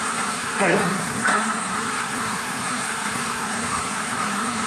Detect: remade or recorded remade